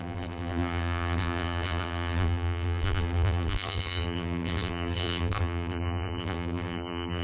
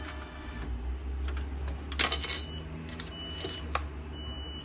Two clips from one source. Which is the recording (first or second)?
second